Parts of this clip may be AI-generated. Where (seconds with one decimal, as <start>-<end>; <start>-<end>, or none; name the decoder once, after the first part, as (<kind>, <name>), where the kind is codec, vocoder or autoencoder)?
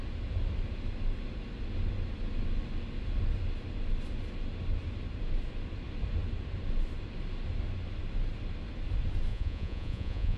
9.3-10.4 (vocoder, Vocos)